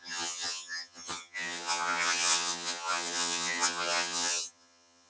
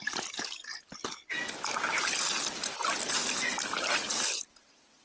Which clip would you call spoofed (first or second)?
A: first